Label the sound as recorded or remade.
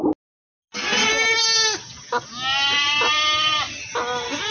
recorded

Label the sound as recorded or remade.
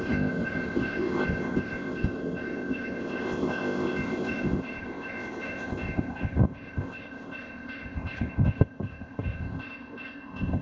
remade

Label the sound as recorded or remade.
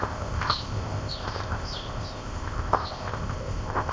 remade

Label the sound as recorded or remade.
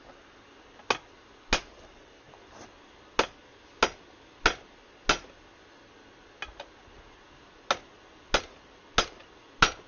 recorded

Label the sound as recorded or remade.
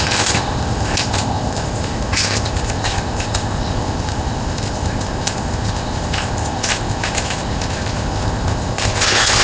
remade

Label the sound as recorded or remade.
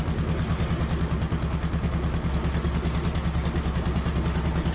recorded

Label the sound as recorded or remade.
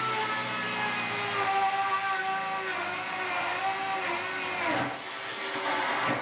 recorded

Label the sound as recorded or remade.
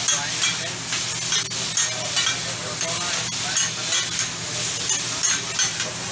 recorded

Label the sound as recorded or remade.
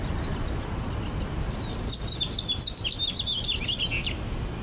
recorded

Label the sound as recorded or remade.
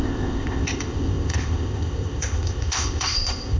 remade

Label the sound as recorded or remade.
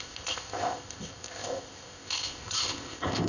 remade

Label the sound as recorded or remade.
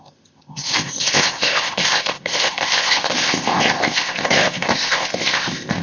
remade